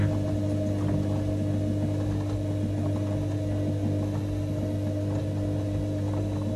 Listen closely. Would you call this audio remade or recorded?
recorded